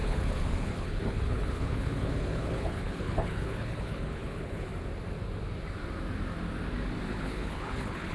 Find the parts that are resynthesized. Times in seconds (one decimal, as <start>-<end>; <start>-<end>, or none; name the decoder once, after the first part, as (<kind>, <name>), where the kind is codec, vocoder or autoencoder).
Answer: 0.0-4.7 (codec, HILCodec); 7.1-8.1